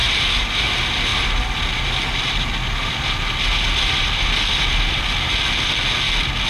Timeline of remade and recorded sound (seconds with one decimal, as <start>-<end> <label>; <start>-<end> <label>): 0.0-0.6 remade; 0.6-1.1 recorded; 1.1-5.0 remade; 5.0-6.5 recorded